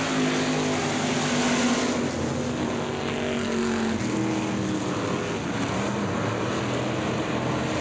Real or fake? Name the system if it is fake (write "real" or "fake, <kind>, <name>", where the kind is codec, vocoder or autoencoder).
real